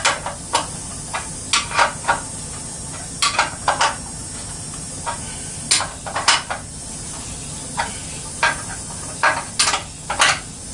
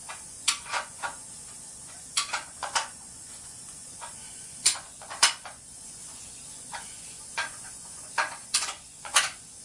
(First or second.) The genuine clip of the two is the first